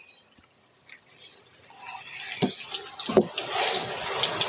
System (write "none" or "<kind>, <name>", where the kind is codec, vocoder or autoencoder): none